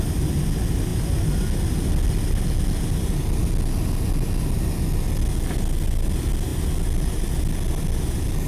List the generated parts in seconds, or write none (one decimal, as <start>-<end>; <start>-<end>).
none